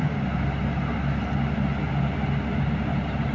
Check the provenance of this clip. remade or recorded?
recorded